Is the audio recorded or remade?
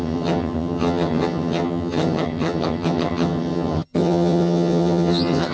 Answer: remade